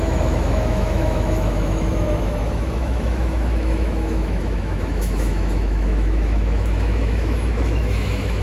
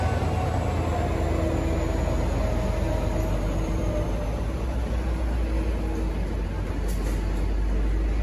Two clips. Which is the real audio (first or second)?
second